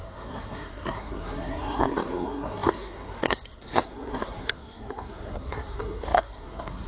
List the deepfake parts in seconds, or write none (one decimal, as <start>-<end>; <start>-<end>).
0.0-6.9